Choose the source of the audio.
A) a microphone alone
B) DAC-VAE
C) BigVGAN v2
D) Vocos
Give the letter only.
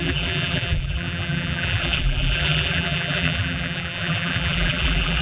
C